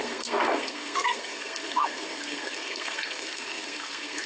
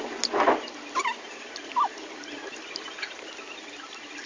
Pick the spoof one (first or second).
first